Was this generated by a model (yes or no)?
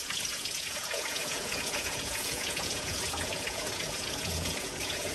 yes